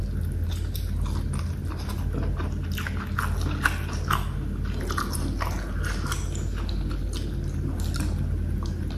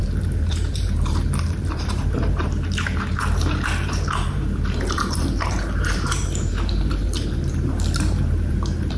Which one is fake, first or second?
second